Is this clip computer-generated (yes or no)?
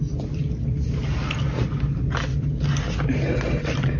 no